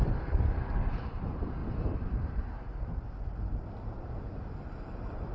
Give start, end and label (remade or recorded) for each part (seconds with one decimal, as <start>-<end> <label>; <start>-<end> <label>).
0.0-1.6 remade; 1.6-4.8 recorded; 4.8-5.3 remade